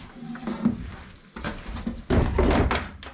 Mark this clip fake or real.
real